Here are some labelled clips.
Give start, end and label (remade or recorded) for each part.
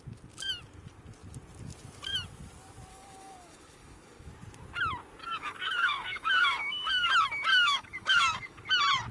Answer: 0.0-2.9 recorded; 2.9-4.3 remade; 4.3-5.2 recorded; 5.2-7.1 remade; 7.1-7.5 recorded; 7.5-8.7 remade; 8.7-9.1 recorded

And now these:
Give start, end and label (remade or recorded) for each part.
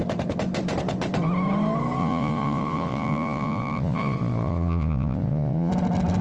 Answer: 0.0-2.0 recorded; 2.0-5.7 remade; 5.7-6.2 recorded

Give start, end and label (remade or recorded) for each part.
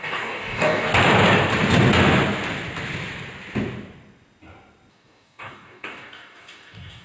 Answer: 0.0-0.9 remade; 0.9-4.9 recorded; 4.9-7.0 remade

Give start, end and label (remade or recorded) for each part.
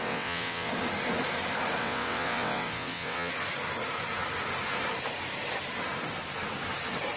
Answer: 0.0-0.7 remade; 0.7-1.8 recorded; 1.8-3.3 remade; 3.3-7.2 recorded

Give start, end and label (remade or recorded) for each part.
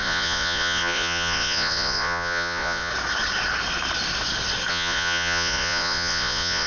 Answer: 0.0-2.9 remade; 2.9-4.7 recorded; 4.7-6.7 remade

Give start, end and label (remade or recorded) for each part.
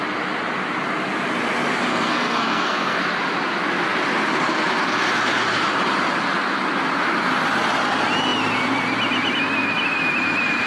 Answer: 0.0-1.9 recorded; 1.9-3.0 remade; 3.0-10.7 recorded